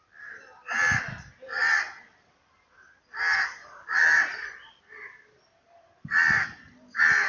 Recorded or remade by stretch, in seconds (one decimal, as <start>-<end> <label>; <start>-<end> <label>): 0.0-7.3 recorded